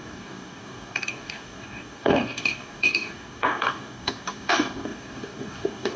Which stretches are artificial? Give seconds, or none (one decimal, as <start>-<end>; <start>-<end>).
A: 0.0-6.0